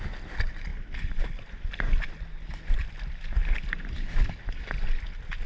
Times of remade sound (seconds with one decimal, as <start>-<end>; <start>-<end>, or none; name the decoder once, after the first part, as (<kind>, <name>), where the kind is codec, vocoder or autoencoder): none